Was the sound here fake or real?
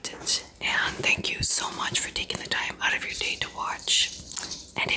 real